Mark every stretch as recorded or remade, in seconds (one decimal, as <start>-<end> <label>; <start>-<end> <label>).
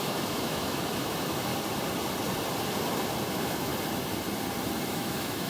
0.0-1.5 remade; 1.5-3.3 recorded; 3.3-3.7 remade; 3.7-4.9 recorded; 4.9-5.5 remade